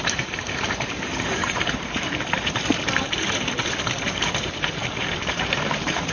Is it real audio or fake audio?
fake